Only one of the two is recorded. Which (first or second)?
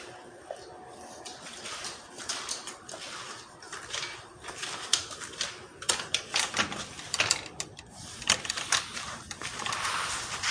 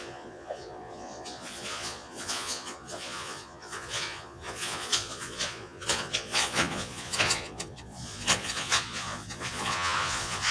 first